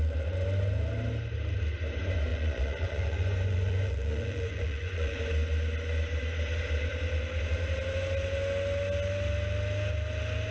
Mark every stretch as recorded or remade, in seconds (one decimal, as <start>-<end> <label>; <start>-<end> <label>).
0.0-2.3 recorded; 2.3-5.2 remade; 5.2-10.5 recorded